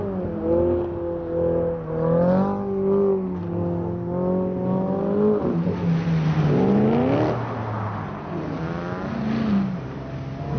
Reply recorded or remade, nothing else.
recorded